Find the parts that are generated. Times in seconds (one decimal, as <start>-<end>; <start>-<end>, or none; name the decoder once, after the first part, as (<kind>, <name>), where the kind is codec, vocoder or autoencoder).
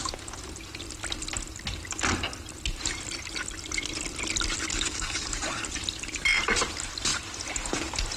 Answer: 4.7-5.6 (codec, DAC)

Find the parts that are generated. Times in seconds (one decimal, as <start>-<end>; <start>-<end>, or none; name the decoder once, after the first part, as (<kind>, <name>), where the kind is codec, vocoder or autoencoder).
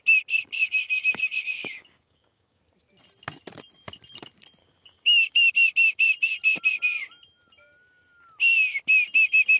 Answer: 0.6-2.6 (codec, DAC); 4.6-5.5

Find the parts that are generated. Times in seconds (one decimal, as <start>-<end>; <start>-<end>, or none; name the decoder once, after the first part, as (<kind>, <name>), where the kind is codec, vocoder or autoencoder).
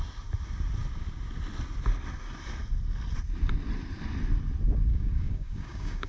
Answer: 4.9-6.1 (codec, DAC)